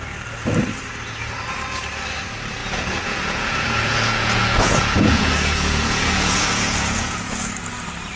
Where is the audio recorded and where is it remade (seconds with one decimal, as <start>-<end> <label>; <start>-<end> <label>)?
0.0-2.6 recorded; 2.6-7.5 remade; 7.5-8.2 recorded